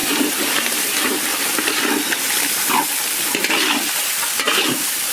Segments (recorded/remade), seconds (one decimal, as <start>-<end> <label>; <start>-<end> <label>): 0.0-1.3 remade; 1.3-4.4 recorded; 4.4-5.1 remade